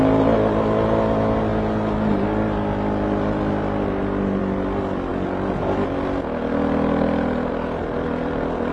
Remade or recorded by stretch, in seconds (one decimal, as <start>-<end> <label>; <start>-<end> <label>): 0.0-8.7 recorded